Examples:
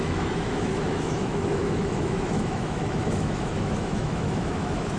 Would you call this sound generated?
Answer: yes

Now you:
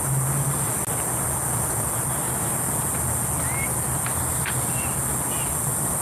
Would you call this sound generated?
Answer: no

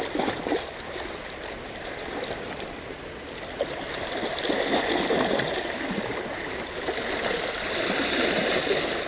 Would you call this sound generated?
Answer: no